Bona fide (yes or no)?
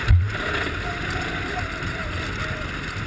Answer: yes